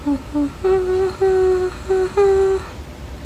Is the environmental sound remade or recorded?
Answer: recorded